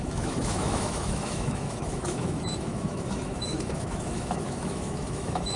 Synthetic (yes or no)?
yes